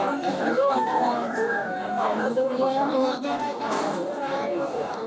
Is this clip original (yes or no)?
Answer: no